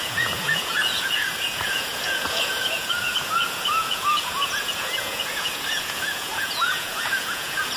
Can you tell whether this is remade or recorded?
remade